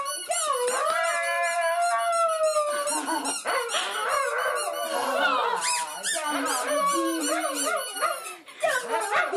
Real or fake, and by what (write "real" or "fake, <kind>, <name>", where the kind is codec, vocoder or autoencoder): real